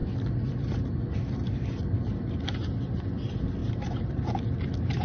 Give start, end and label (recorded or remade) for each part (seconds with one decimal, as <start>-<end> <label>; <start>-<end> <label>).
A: 0.0-3.6 recorded; 3.6-4.2 remade; 4.2-5.0 recorded